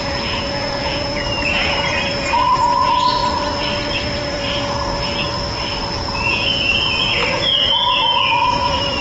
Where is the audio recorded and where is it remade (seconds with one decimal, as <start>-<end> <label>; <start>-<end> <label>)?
0.0-3.2 remade; 3.2-6.0 recorded; 6.0-9.0 remade